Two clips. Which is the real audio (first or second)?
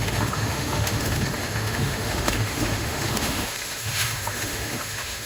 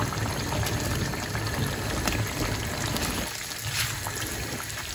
second